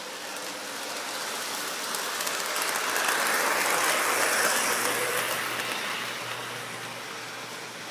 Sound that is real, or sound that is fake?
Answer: real